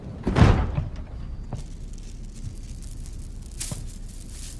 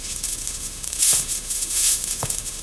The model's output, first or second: second